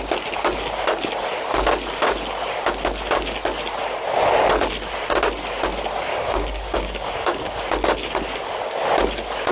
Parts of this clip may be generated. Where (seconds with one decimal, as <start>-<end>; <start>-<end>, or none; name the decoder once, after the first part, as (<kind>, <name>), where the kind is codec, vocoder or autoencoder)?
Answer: 6.1-7.4 (codec, DAC)